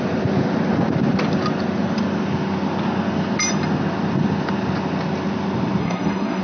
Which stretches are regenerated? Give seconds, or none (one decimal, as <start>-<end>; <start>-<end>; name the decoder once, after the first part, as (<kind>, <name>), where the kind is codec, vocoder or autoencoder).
5.8-6.4 (codec, SNAC)